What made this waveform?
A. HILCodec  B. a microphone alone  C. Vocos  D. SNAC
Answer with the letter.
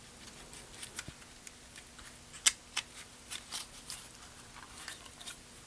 B